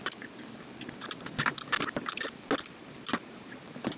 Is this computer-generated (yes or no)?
no